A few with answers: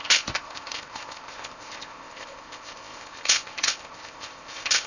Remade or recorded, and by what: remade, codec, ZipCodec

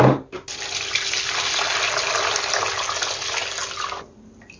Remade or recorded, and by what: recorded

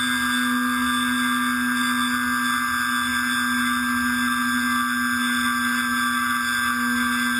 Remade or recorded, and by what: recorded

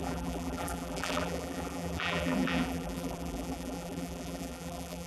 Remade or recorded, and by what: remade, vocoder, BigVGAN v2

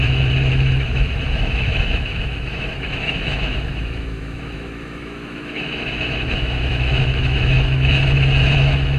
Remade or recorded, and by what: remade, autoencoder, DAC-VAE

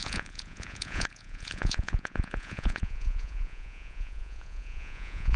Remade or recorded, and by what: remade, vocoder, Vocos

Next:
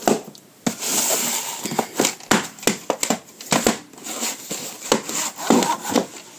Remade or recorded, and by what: recorded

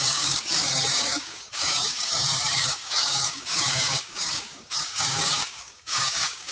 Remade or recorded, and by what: remade, codec, DAC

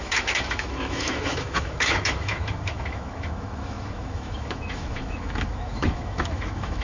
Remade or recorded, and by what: remade, autoencoder, DAC-VAE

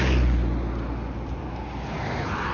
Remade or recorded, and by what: recorded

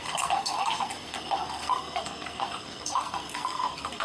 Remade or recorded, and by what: remade, codec, SNAC